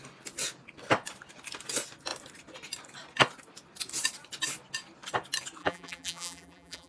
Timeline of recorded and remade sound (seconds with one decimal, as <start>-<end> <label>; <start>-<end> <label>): 0.0-5.6 recorded; 5.6-6.9 remade